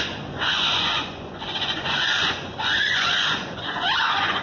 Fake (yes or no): yes